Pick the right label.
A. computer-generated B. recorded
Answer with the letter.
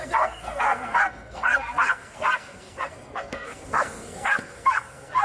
A